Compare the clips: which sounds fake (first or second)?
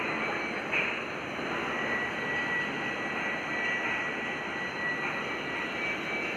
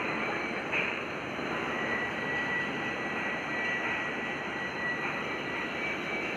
second